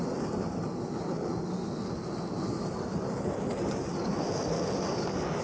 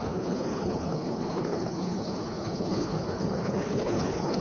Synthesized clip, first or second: second